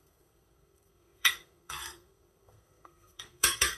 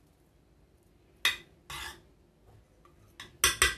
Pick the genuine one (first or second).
second